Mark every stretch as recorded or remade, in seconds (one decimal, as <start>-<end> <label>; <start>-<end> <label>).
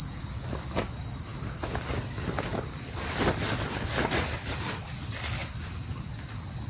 0.0-6.7 recorded